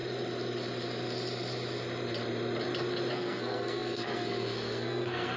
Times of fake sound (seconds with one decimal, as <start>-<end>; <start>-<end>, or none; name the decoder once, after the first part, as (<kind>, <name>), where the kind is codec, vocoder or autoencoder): 3.1-5.4 (codec, SNAC)